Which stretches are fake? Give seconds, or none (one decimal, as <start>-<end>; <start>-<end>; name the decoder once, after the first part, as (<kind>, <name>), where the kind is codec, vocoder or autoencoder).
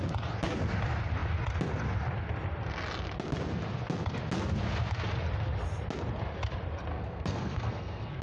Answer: 6.9-8.2 (codec, SNAC)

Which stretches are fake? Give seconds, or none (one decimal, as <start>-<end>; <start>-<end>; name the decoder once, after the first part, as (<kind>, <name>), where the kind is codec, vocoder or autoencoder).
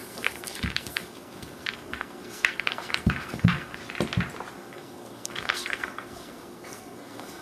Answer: 0.0-3.8 (codec, SNAC); 4.5-7.4